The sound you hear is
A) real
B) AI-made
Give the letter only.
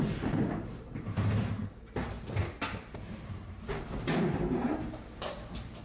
B